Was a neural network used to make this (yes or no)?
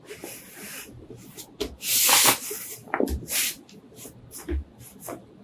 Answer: no